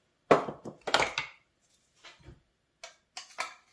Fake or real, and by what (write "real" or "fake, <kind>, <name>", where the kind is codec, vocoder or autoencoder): real